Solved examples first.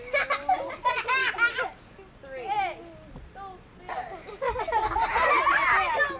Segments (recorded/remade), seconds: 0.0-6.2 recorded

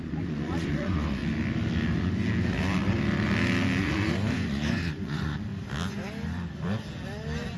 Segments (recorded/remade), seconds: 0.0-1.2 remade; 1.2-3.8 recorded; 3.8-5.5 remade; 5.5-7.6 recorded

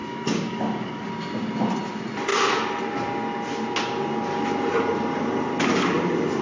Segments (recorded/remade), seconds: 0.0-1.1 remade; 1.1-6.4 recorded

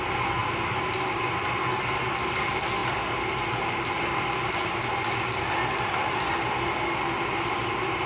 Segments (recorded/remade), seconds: 0.0-8.1 recorded